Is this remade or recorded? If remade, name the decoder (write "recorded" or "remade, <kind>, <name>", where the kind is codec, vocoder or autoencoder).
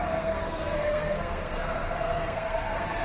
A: remade, codec, SNAC